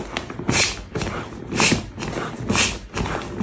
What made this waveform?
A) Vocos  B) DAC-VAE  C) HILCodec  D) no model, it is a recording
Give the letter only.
D